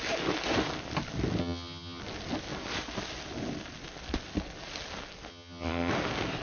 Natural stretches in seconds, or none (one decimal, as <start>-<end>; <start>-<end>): 0.0-1.4; 2.0-5.3; 5.9-6.4